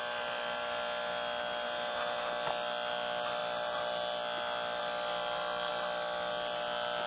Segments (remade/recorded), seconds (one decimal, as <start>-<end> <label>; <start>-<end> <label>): 0.0-7.1 recorded